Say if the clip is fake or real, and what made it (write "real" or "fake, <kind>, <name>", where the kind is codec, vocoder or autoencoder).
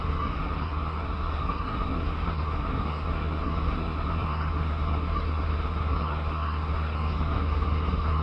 fake, codec, SNAC